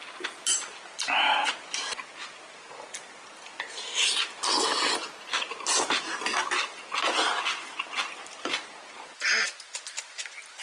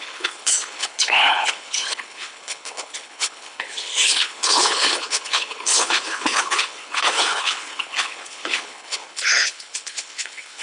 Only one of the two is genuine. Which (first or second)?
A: first